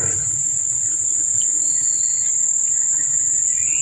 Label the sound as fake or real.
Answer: real